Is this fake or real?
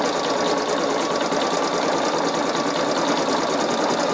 real